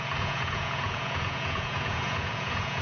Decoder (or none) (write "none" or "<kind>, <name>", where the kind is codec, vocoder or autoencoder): vocoder, Vocos